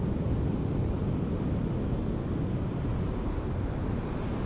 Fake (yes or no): no